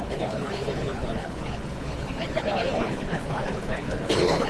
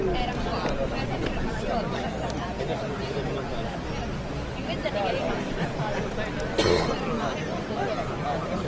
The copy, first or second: first